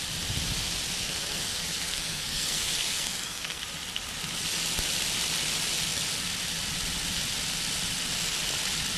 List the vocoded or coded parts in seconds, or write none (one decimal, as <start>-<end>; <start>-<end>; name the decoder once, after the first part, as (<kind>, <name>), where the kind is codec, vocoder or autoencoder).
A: 1.0-3.6 (codec, SNAC)